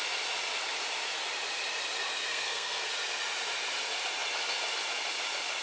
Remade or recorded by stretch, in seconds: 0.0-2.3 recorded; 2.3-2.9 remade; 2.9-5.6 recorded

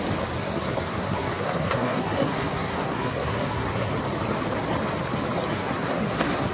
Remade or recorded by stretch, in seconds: 0.0-0.4 recorded; 0.4-3.9 remade; 3.9-5.5 recorded; 5.5-6.5 remade

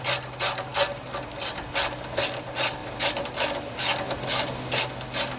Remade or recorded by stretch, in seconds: 0.0-5.4 recorded

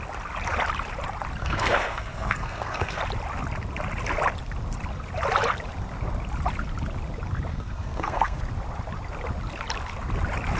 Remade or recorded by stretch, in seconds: 0.0-1.4 recorded; 1.4-3.0 remade; 3.0-7.5 recorded; 7.5-8.4 remade; 8.4-10.6 recorded

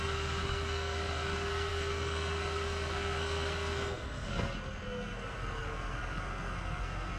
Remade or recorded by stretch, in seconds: 0.0-7.2 remade